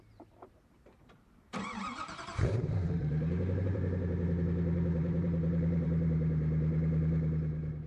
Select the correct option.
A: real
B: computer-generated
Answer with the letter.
B